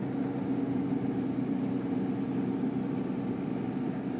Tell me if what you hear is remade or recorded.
recorded